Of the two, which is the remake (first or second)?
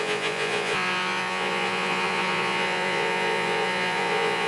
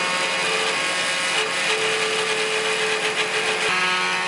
first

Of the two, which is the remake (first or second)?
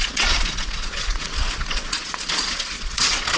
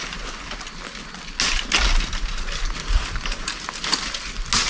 first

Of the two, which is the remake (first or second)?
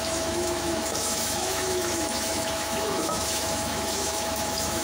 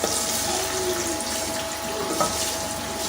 first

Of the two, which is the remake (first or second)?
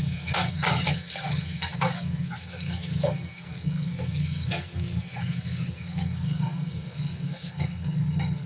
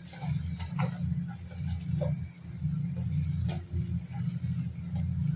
first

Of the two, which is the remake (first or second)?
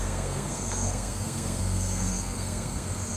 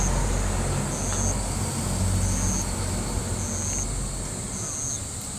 first